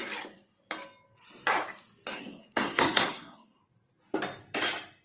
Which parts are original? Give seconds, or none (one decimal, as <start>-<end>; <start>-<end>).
0.0-2.1; 3.7-5.0